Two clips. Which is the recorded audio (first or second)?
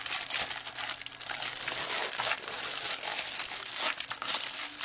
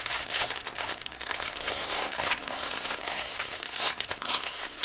first